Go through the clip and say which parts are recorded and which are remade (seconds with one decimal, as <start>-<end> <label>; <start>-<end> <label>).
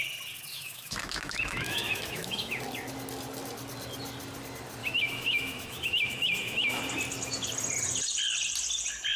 0.0-0.5 recorded; 0.5-2.6 remade; 2.6-4.8 recorded; 4.8-6.8 remade; 6.8-9.2 recorded